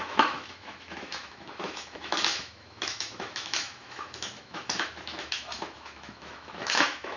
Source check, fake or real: fake